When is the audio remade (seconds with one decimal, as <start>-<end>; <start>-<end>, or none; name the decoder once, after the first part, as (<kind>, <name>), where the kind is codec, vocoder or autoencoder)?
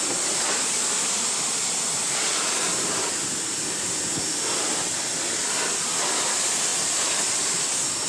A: none